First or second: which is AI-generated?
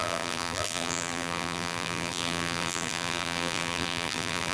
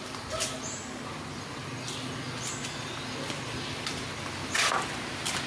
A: first